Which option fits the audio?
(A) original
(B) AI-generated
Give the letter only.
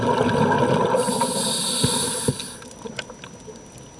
A